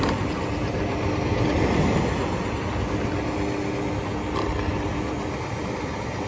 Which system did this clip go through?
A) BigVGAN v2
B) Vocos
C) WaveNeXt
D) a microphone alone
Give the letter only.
D